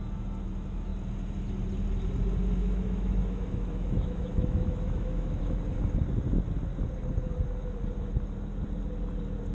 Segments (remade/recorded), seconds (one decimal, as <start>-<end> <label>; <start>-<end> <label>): 0.0-2.6 recorded; 2.6-5.4 remade; 5.4-9.5 recorded